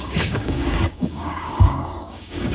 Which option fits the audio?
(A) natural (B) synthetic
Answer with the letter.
B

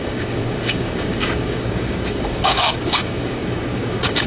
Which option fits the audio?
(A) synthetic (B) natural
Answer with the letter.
A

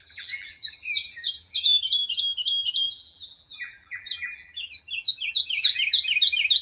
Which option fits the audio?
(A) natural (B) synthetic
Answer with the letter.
B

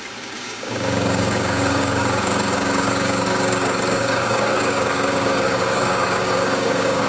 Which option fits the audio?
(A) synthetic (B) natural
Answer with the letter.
A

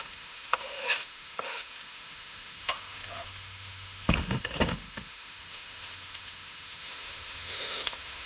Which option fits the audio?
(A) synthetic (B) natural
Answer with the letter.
A